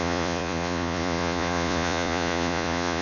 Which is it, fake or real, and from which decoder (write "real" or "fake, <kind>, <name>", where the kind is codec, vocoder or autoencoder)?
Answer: fake, vocoder, Vocos